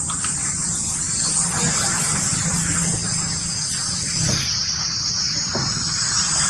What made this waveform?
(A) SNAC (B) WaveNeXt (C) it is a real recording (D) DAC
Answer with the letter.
C